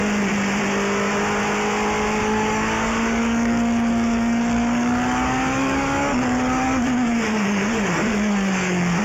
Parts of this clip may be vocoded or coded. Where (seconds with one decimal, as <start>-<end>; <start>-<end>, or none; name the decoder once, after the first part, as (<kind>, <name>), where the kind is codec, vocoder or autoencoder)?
2.2-9.0 (codec, DAC)